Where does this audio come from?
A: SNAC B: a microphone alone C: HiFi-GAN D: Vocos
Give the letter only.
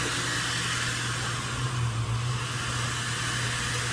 B